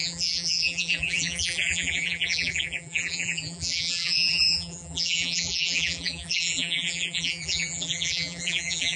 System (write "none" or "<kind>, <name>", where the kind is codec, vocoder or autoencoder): vocoder, BigVGAN v2